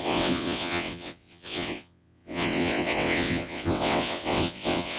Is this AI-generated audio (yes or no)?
yes